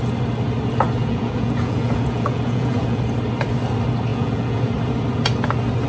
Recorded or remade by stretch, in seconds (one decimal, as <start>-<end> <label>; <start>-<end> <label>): 0.0-1.0 recorded; 1.0-3.0 remade; 3.0-4.1 recorded; 4.1-4.6 remade; 4.6-5.9 recorded